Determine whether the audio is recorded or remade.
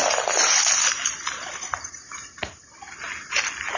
recorded